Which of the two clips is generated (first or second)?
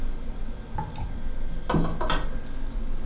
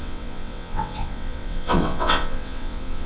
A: second